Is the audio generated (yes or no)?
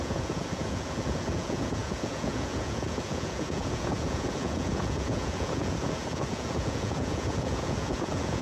yes